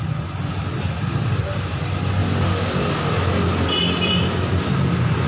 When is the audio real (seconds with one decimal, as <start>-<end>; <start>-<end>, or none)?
0.0-5.3